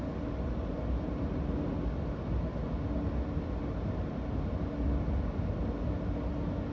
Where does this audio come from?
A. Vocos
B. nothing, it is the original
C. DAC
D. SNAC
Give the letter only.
B